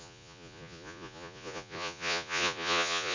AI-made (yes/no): yes